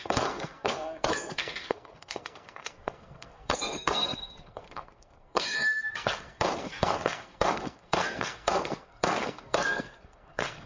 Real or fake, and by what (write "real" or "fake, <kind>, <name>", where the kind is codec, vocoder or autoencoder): fake, codec, SNAC